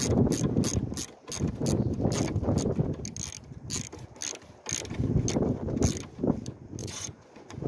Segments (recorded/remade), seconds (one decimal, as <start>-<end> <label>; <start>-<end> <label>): 0.0-6.8 recorded; 6.8-7.7 remade